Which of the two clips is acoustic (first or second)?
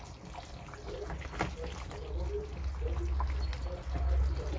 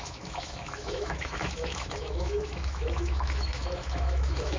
first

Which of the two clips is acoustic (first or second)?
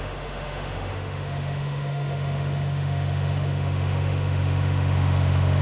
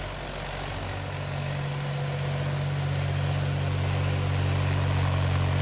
second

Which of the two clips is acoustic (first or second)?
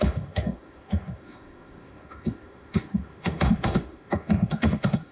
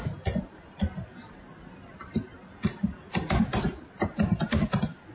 second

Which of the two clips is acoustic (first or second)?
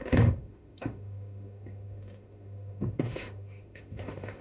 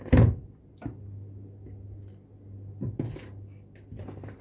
second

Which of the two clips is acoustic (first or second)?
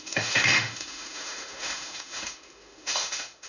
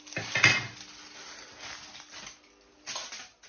second